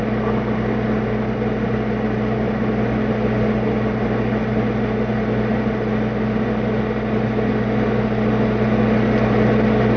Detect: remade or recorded recorded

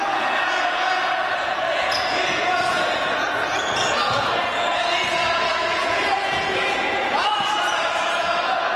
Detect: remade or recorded remade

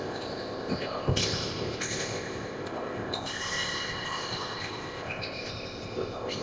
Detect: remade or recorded remade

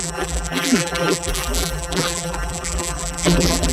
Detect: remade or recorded remade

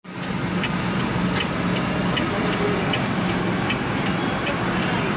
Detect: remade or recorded recorded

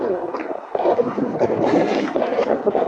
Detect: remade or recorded remade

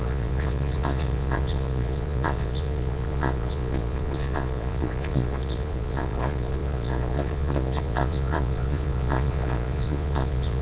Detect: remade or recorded remade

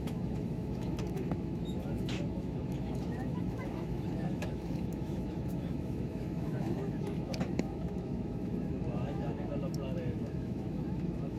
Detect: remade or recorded remade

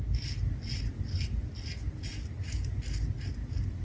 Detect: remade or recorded recorded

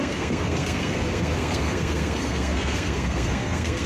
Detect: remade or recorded remade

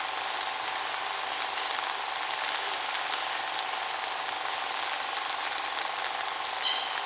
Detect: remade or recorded recorded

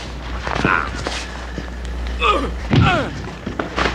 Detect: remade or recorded recorded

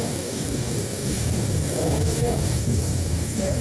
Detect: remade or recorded remade